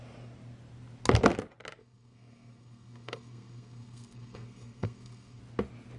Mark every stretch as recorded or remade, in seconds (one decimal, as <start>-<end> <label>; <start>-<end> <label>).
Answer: 0.0-1.8 recorded; 1.8-5.4 remade; 5.4-6.0 recorded

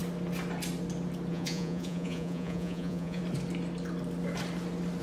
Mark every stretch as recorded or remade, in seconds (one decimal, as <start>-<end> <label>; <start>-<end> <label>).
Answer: 0.0-1.3 recorded; 1.3-3.2 remade; 3.2-5.0 recorded

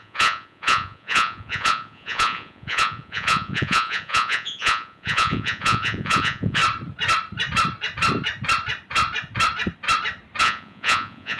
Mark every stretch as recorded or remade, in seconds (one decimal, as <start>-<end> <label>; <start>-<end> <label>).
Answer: 0.0-6.6 remade; 6.6-10.4 recorded; 10.4-11.4 remade

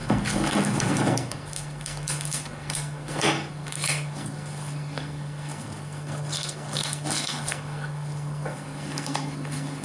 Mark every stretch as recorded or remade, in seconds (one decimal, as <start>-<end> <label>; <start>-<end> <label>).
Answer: 0.0-9.8 remade

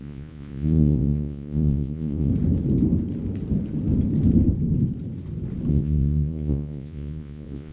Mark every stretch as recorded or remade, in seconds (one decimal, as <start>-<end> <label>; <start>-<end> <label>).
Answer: 0.0-2.3 remade; 2.3-5.7 recorded; 5.7-7.7 remade

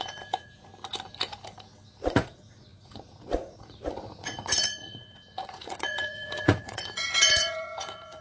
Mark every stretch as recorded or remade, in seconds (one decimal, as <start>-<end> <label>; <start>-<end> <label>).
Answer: 0.0-0.7 remade; 0.7-2.0 recorded; 2.0-8.2 remade

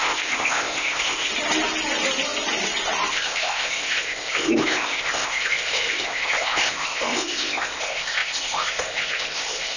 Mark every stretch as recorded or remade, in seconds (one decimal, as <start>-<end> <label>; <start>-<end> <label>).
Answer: 0.0-1.3 remade; 1.3-3.1 recorded; 3.1-9.8 remade

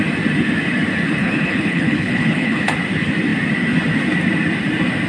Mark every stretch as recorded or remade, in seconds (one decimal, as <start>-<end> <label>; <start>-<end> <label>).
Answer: 0.0-1.2 recorded; 1.2-2.7 remade; 2.7-5.1 recorded